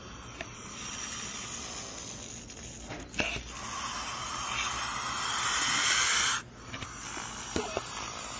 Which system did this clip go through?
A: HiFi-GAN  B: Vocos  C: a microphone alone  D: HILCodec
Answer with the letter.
C